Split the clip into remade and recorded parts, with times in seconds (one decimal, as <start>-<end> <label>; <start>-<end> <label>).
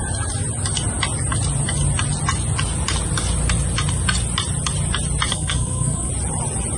0.0-5.3 recorded; 5.3-6.1 remade; 6.1-6.8 recorded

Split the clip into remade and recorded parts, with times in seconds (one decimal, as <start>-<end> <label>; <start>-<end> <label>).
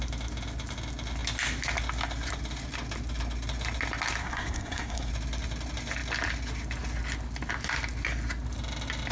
0.0-4.2 recorded; 4.2-5.1 remade; 5.1-9.1 recorded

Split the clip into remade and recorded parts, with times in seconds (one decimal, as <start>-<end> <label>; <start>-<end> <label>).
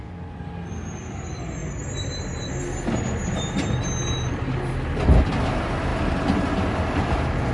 0.0-7.5 recorded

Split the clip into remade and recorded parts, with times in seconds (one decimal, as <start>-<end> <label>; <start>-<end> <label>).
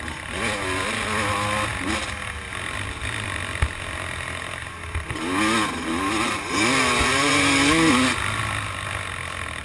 0.0-9.6 recorded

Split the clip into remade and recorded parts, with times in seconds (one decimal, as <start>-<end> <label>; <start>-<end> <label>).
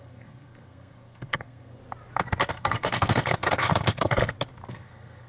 0.0-1.8 remade; 1.8-2.5 recorded; 2.5-4.2 remade; 4.2-4.7 recorded; 4.7-5.3 remade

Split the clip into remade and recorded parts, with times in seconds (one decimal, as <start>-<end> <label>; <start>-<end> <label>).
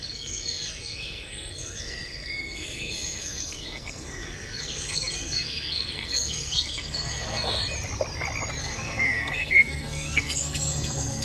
0.0-7.6 remade; 7.6-8.6 recorded; 8.6-11.2 remade